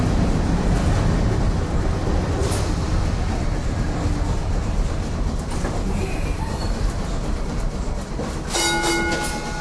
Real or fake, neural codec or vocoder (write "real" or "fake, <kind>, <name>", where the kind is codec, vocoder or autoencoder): real